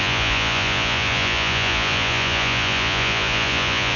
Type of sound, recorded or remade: remade